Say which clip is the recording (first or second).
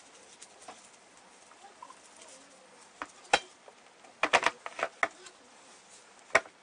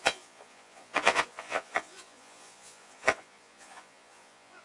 first